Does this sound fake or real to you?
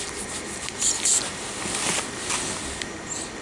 real